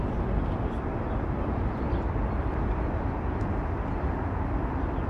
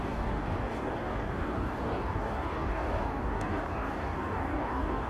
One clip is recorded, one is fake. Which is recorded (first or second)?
first